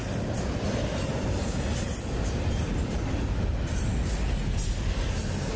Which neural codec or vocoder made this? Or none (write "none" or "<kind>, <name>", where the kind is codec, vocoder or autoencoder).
none